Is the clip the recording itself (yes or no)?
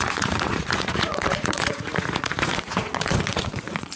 no